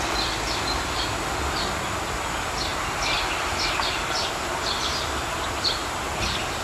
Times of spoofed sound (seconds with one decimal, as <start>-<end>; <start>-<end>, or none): 2.7-5.3; 5.8-6.6